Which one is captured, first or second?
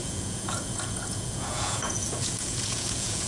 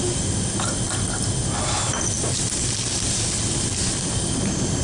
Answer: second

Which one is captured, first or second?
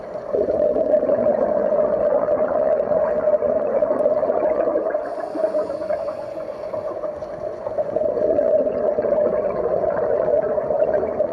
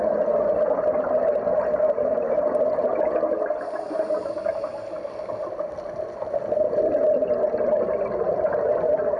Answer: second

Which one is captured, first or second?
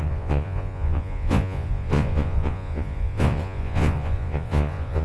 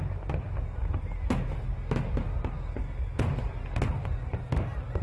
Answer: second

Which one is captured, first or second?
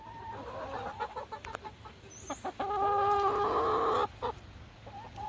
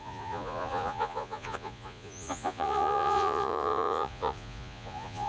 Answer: first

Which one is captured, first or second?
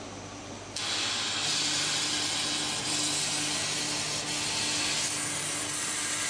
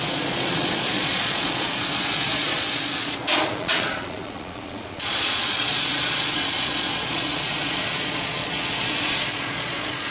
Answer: first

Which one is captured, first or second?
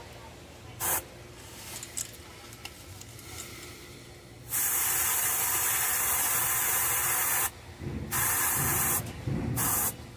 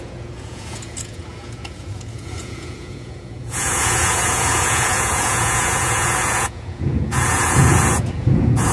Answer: first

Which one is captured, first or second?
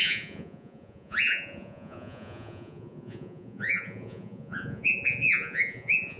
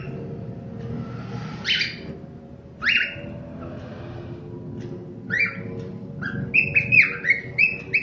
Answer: second